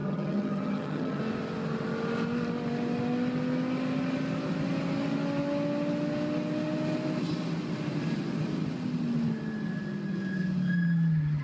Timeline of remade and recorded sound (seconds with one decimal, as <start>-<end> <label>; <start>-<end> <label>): 0.0-1.2 remade; 1.2-11.4 recorded